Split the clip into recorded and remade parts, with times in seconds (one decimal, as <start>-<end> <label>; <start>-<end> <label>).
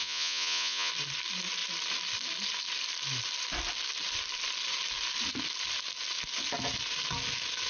0.0-0.9 remade; 0.9-7.7 recorded